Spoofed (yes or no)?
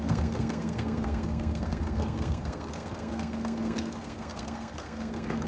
yes